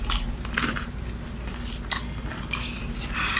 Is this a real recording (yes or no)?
yes